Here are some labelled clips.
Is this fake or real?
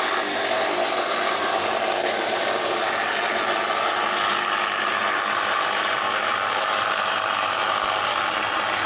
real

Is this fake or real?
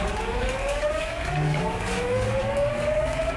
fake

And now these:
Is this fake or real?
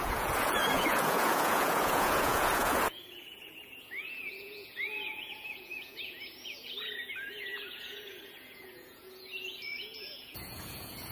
fake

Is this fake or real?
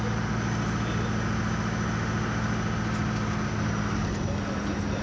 real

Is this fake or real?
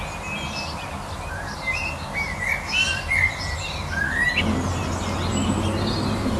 real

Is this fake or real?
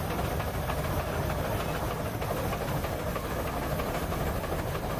real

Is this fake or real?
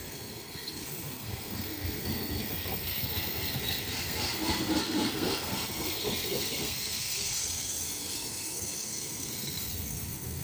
fake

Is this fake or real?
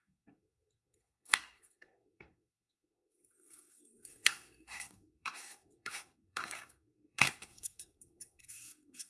fake